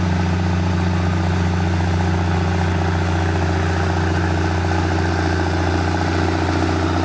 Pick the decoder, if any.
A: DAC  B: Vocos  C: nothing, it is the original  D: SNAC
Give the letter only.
C